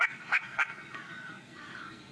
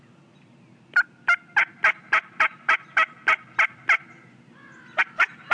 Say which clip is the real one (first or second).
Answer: second